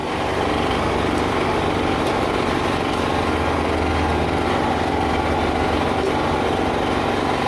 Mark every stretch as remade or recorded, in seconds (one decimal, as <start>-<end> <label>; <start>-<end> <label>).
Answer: 0.0-7.5 recorded